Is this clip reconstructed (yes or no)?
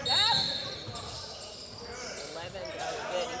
no